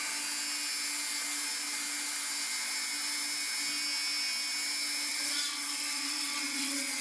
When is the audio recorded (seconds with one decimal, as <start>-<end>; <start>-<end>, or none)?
0.0-5.1